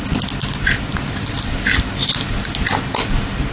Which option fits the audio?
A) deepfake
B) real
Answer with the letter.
B